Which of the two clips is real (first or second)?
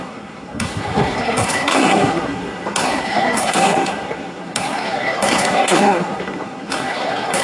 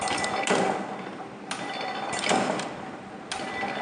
second